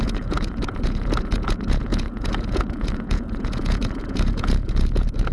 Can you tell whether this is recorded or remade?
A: remade